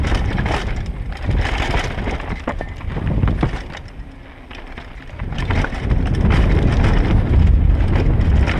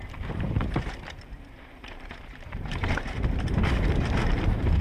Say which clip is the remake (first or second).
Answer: second